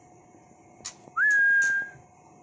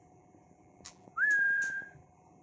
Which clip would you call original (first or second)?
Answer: first